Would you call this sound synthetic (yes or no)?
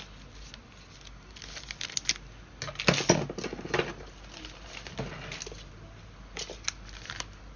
no